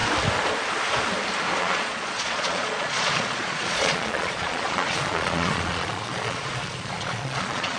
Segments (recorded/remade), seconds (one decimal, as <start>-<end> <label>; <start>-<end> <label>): 0.0-1.6 recorded; 1.6-7.8 remade